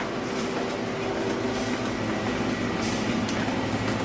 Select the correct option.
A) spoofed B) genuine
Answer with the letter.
B